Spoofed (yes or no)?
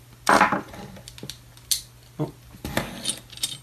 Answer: no